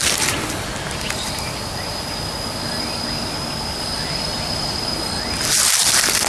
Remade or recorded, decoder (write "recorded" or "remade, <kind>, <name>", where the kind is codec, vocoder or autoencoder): recorded